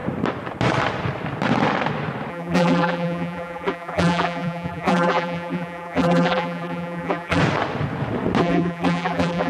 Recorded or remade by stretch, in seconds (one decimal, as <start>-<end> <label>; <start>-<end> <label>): 0.0-2.3 recorded; 2.3-7.4 remade; 7.4-8.4 recorded; 8.4-9.5 remade